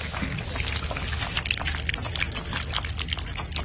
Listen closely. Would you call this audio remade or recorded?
recorded